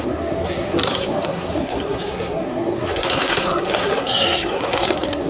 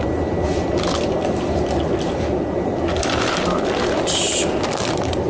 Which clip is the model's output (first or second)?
first